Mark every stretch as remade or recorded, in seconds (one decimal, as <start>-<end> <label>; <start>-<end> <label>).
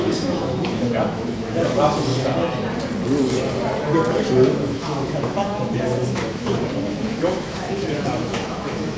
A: 0.0-2.1 remade; 2.1-4.2 recorded; 4.2-9.0 remade